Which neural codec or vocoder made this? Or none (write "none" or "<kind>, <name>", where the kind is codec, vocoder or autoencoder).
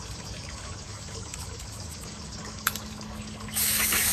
codec, DAC